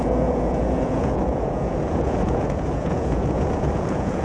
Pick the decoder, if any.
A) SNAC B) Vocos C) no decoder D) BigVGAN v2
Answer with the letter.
B